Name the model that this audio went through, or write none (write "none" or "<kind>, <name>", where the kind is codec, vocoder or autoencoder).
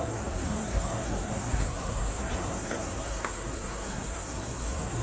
codec, SNAC